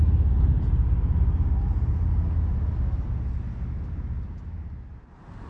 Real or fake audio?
real